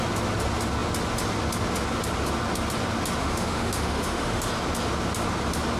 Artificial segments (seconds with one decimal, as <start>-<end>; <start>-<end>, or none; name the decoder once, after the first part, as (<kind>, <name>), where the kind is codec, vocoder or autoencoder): 3.2-4.5 (autoencoder, DAC-VAE)